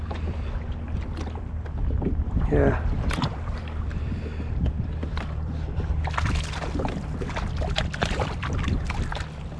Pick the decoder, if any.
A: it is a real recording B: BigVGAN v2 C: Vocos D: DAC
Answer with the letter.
B